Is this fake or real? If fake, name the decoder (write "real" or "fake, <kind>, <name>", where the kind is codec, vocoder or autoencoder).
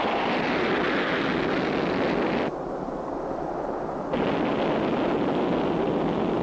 real